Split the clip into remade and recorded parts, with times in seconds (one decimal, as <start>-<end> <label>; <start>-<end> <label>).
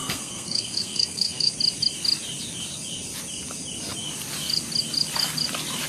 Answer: 0.0-1.5 remade; 1.5-5.9 recorded